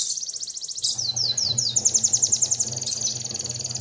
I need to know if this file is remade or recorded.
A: recorded